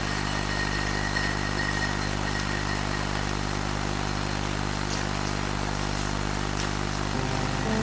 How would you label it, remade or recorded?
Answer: recorded